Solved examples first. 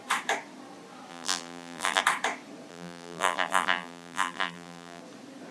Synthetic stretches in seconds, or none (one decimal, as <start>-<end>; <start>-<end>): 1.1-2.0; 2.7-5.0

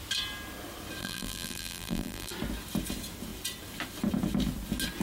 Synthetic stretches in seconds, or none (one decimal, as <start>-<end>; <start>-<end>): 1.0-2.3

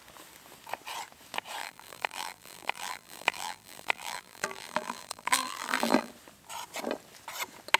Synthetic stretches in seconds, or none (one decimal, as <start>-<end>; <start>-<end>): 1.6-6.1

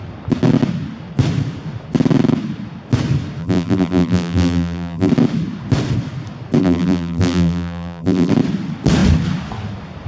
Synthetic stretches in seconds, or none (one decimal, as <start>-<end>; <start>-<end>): 3.4-5.1; 6.6-8.3

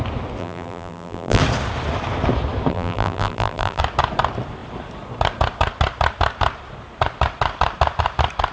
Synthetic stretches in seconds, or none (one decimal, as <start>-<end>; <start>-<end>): 0.4-1.4; 2.7-3.8